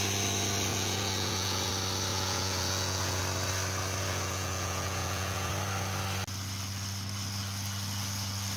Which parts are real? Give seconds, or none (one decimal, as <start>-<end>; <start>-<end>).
0.0-0.7; 1.7-2.1; 3.2-4.1; 5.5-8.6